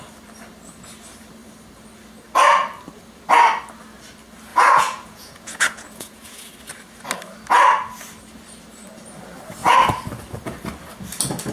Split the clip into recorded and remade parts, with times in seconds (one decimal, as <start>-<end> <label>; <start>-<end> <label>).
0.0-4.5 recorded; 4.5-6.5 remade; 6.5-11.5 recorded